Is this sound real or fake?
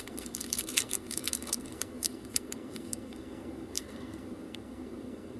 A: fake